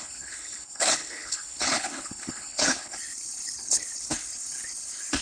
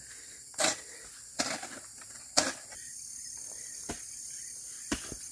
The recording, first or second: second